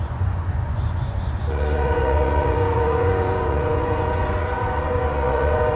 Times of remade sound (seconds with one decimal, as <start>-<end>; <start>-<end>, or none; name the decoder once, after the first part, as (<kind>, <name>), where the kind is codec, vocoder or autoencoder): 0.0-5.8 (vocoder, Vocos)